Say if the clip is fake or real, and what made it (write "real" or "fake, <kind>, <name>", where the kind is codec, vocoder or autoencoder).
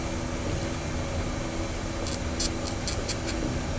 real